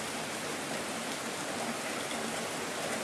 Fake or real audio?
real